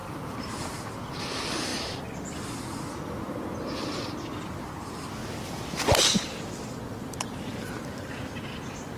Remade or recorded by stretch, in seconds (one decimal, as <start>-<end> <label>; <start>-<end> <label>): 0.0-9.0 recorded